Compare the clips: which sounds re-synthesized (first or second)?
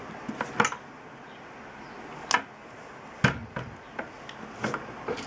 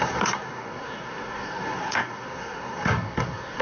second